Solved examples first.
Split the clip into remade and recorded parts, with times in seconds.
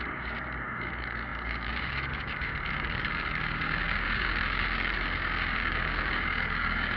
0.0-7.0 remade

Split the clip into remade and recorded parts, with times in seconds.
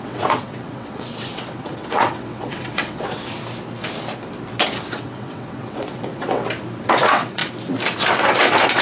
0.0-3.4 remade; 3.4-4.9 recorded; 4.9-6.4 remade; 6.4-6.9 recorded; 6.9-7.4 remade; 7.4-8.1 recorded; 8.1-8.8 remade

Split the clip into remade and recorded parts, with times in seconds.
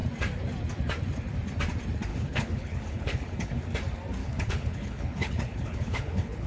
0.0-2.1 recorded; 2.1-3.6 remade; 3.6-4.2 recorded; 4.2-6.5 remade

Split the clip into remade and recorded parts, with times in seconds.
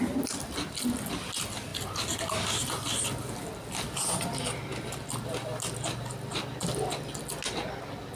0.0-8.2 recorded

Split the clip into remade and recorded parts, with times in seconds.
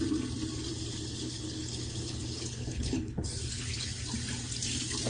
0.0-0.9 recorded; 0.9-4.0 remade; 4.0-5.1 recorded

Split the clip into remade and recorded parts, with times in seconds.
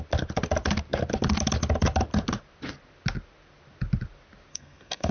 0.0-4.5 recorded; 4.5-5.1 remade